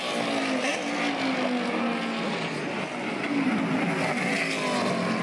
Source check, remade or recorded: recorded